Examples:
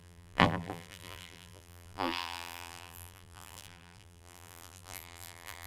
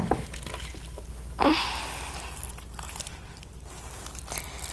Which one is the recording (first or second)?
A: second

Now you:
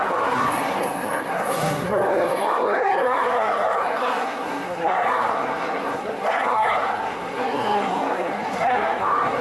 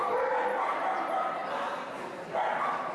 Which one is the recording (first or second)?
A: second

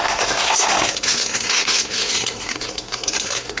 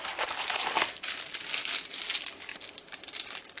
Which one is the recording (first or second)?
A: second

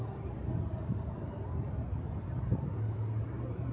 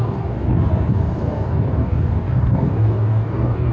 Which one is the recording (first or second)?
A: first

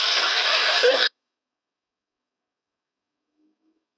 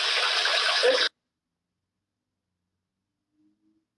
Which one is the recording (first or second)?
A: second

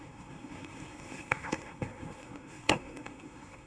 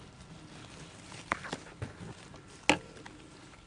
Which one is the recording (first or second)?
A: second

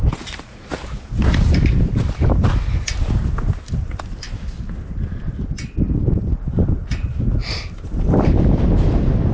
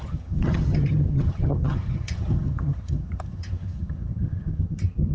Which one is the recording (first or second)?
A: first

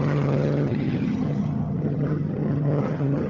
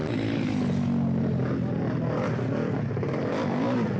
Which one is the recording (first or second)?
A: second